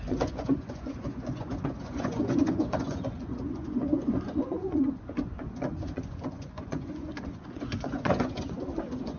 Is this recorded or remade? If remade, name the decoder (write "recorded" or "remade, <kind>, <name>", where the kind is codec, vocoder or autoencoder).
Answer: remade, vocoder, Vocos